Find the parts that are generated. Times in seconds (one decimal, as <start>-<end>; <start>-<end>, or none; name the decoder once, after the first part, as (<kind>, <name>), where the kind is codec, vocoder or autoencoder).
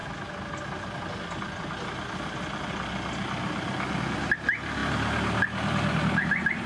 none